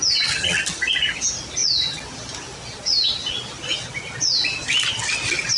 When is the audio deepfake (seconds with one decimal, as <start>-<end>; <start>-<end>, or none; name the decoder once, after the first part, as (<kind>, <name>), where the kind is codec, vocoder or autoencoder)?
none